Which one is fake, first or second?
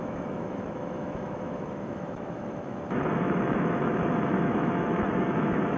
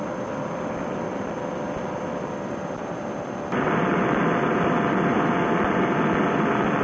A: first